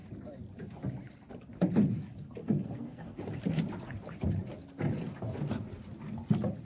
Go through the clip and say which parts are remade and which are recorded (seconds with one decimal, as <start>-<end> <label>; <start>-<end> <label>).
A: 0.0-2.4 recorded; 2.4-3.2 remade; 3.2-6.6 recorded